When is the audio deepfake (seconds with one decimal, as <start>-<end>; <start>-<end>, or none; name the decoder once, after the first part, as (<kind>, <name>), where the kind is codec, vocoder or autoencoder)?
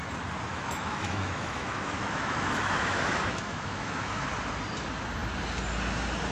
0.5-4.3 (autoencoder, DAC-VAE)